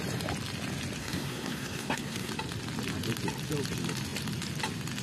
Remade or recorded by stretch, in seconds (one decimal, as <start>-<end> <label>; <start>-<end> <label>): 0.0-1.0 recorded; 1.0-2.3 remade; 2.3-5.0 recorded